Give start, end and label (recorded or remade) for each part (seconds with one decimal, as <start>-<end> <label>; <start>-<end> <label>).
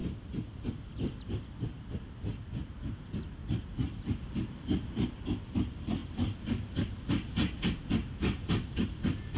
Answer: 0.0-3.4 recorded; 3.4-4.0 remade; 4.0-9.4 recorded